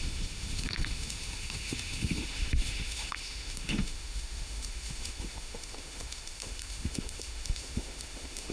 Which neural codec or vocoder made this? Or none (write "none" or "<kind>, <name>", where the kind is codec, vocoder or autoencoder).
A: autoencoder, DAC-VAE